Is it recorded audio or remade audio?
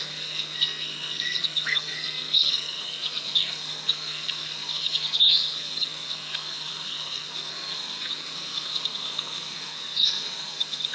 remade